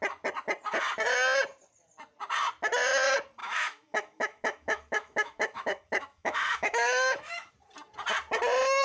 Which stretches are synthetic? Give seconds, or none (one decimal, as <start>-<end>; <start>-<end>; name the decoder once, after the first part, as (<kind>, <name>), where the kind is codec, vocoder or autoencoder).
3.4-7.5 (autoencoder, DAC-VAE)